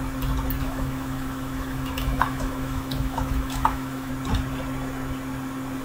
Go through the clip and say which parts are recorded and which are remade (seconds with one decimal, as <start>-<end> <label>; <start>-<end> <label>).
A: 0.0-0.6 recorded; 0.6-4.1 remade; 4.1-5.8 recorded

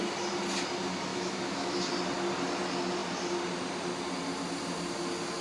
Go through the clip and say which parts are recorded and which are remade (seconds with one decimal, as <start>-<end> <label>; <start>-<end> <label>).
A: 0.0-1.1 recorded; 1.1-1.9 remade; 1.9-5.4 recorded

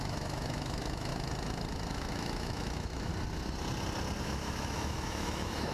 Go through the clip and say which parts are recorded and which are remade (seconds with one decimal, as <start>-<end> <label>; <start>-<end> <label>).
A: 0.0-1.1 remade; 1.1-1.9 recorded; 1.9-3.1 remade; 3.1-4.2 recorded; 4.2-5.7 remade

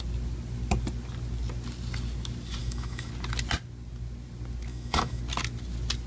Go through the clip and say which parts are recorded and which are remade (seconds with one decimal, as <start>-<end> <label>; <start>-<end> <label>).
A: 0.0-2.6 recorded; 2.6-3.1 remade; 3.1-4.7 recorded; 4.7-5.2 remade; 5.2-6.1 recorded

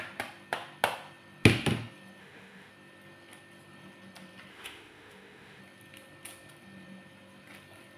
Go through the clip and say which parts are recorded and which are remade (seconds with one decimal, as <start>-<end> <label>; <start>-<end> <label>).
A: 0.0-2.2 recorded; 2.2-2.7 remade; 2.7-4.5 recorded; 4.5-5.6 remade; 5.6-8.0 recorded

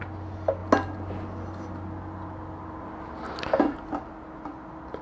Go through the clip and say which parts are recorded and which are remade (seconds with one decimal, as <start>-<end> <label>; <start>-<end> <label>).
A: 0.0-5.0 recorded